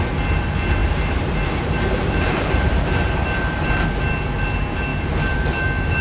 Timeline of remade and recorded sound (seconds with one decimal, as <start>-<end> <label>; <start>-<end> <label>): 0.0-0.8 recorded; 0.8-3.7 remade; 3.7-4.9 recorded; 4.9-5.5 remade; 5.5-6.0 recorded